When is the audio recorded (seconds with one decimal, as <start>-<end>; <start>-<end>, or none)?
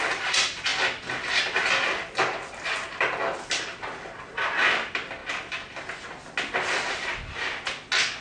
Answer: 0.0-8.2